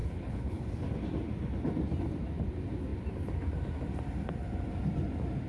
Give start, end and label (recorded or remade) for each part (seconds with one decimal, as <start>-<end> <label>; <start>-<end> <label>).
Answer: 0.0-0.7 remade; 0.7-5.5 recorded